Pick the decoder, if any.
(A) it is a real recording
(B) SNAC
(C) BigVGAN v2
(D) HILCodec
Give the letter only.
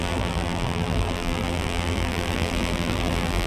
C